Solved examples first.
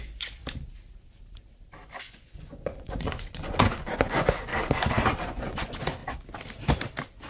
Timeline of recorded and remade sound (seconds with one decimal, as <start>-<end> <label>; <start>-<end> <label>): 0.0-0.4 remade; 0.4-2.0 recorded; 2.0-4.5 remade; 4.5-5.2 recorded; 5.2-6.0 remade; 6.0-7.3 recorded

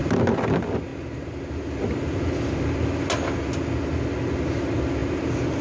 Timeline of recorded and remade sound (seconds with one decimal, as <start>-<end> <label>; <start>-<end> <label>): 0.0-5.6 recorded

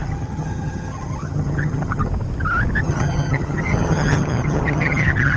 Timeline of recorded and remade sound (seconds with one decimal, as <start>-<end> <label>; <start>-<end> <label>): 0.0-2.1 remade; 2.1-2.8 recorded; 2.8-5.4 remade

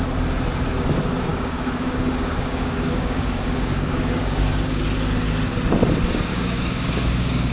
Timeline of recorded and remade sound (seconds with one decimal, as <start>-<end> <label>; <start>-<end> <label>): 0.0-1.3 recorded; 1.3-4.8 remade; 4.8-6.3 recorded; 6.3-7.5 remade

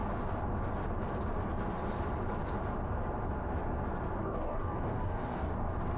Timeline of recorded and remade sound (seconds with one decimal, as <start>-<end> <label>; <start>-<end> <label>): 0.0-4.2 recorded; 4.2-5.5 remade; 5.5-6.0 recorded

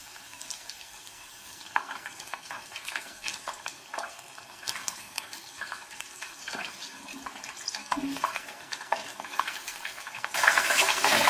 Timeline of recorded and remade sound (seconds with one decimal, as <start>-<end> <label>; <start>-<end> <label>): 0.0-7.1 remade; 7.1-7.7 recorded; 7.7-11.3 remade

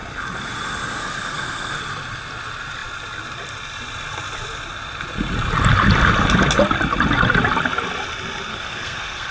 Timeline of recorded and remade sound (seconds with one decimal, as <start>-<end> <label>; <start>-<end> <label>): 0.0-1.0 recorded; 1.0-1.8 remade; 1.8-8.5 recorded; 8.5-9.3 remade

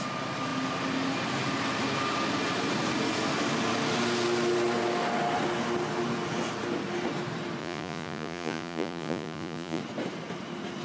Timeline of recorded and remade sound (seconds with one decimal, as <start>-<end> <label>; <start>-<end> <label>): 0.0-7.6 recorded; 7.6-9.8 remade; 9.8-10.8 recorded